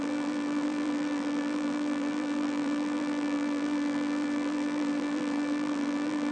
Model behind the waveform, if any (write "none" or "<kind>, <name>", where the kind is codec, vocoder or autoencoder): vocoder, BigVGAN v2